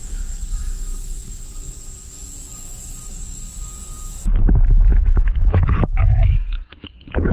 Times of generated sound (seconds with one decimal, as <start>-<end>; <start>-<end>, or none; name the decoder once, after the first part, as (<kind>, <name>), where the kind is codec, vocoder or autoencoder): 0.0-4.4 (codec, DAC); 4.9-7.3